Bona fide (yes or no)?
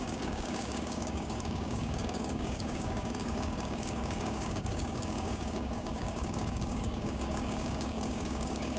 no